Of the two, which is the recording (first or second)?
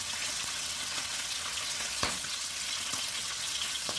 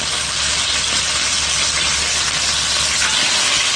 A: second